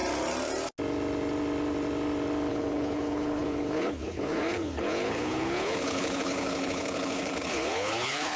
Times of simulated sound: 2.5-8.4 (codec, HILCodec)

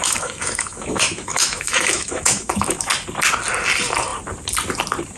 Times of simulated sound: 0.0-2.9 (autoencoder, DAC-VAE)

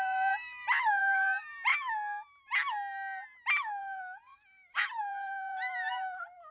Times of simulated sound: 0.0-1.7 (vocoder, BigVGAN v2); 3.8-6.5

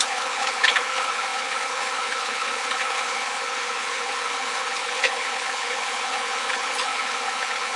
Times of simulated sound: 0.0-7.8 (codec, HILCodec)

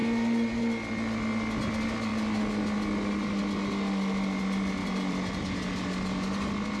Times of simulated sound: 4.8-5.4 (vocoder, BigVGAN v2)